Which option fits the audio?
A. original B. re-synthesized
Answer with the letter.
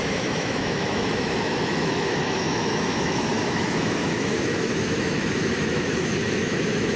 B